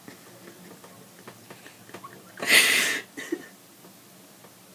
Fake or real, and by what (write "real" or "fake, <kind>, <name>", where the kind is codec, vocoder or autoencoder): real